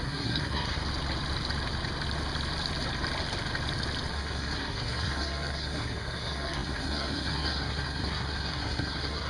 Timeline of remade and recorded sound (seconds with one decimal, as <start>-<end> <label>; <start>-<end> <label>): 0.0-0.8 remade; 0.8-4.1 recorded; 4.1-9.3 remade